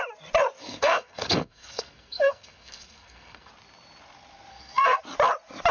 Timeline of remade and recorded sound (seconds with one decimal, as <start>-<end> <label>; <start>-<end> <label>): 0.0-0.6 recorded; 0.6-3.5 remade; 3.5-4.5 recorded; 4.5-5.0 remade; 5.0-5.7 recorded